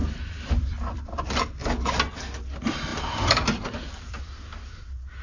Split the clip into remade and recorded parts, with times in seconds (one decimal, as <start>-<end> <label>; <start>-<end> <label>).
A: 0.0-1.4 remade; 1.4-2.9 recorded; 2.9-4.2 remade; 4.2-5.2 recorded